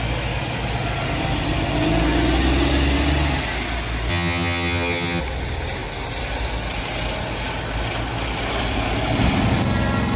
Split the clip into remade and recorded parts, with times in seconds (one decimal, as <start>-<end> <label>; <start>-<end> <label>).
0.0-4.1 recorded; 4.1-5.2 remade; 5.2-10.2 recorded